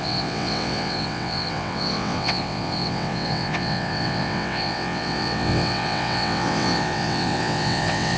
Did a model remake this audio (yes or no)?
yes